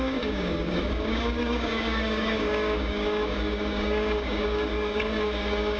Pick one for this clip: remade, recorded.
remade